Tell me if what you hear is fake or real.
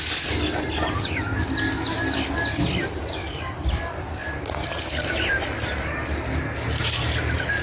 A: real